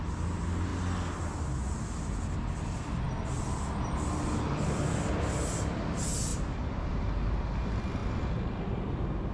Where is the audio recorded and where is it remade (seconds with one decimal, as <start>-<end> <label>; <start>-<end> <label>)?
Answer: 0.0-9.3 recorded